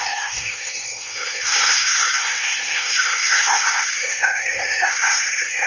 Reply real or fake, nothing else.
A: fake